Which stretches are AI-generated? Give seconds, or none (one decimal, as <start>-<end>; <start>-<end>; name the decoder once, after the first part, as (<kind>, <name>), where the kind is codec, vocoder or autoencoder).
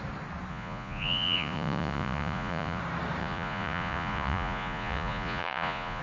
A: 0.5-2.8 (vocoder, Vocos); 3.2-6.0